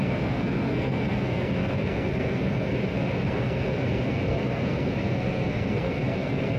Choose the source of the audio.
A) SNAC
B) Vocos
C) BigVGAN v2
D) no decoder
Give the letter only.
A